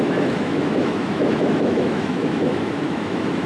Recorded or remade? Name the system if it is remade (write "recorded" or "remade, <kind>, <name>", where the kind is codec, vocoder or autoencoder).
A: remade, autoencoder, DAC-VAE